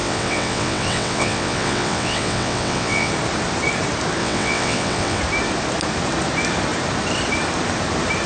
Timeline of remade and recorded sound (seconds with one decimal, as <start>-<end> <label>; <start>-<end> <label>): 0.0-3.1 remade; 3.1-4.2 recorded; 4.2-5.2 remade; 5.2-8.3 recorded